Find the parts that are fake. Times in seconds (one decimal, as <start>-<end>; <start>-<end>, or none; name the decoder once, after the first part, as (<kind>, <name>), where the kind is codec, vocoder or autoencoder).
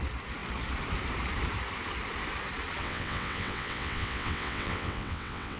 2.8-5.6 (vocoder, WaveNeXt)